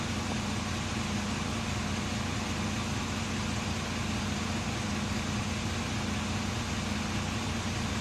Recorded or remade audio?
recorded